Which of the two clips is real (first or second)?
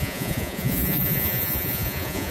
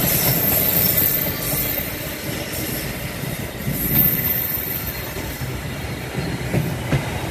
second